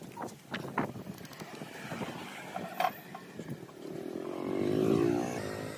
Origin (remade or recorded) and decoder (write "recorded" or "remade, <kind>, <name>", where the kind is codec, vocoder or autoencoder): recorded